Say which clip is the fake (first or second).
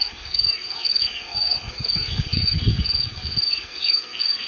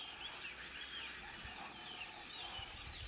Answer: first